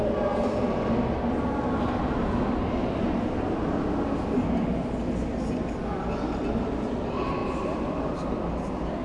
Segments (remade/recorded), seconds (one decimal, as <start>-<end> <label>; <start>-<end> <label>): 0.0-7.4 recorded; 7.4-8.1 remade; 8.1-9.0 recorded